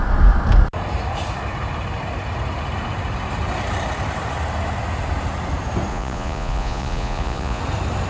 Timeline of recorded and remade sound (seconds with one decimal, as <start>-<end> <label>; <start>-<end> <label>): 0.0-5.9 recorded; 5.9-7.6 remade; 7.6-8.1 recorded